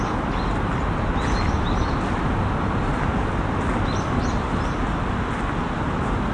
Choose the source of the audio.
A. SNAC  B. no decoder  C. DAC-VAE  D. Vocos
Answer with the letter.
B